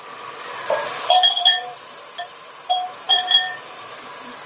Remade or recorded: remade